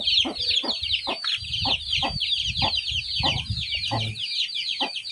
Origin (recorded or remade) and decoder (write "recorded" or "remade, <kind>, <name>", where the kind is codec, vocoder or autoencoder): recorded